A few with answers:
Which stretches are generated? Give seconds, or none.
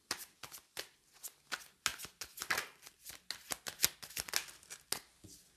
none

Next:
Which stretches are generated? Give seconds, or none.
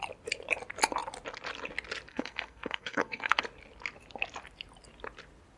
2.1-3.4